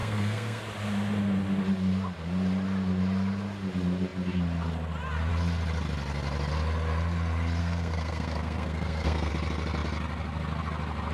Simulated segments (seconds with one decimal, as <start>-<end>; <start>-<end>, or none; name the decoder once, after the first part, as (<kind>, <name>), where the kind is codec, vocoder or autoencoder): 0.0-0.6 (codec, SNAC); 7.6-9.3